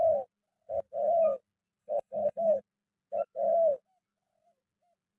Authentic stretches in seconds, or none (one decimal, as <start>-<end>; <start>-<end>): 0.0-1.8; 2.6-5.2